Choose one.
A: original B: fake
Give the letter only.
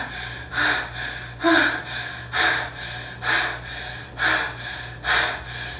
A